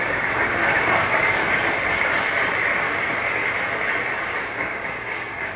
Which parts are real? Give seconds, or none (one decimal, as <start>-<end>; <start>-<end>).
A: 1.4-2.8; 3.4-4.2